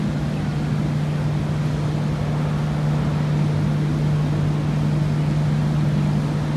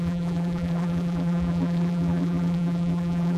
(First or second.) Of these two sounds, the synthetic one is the second